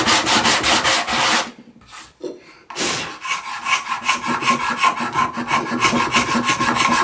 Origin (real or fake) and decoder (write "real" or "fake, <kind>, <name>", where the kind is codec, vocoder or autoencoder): real